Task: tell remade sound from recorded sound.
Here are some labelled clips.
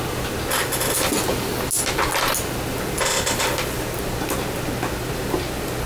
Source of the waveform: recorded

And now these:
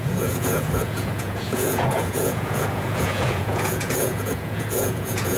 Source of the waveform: remade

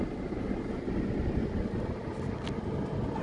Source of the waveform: recorded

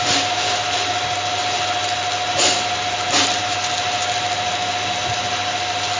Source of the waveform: recorded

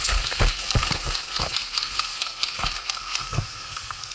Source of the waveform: remade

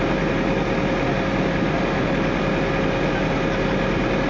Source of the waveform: recorded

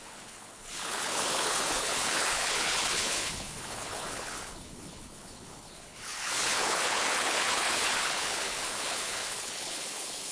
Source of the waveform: remade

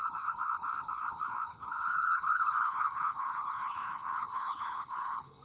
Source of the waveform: remade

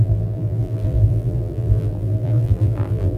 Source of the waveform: remade